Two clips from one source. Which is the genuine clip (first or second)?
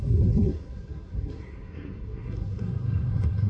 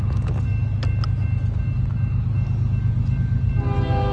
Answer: second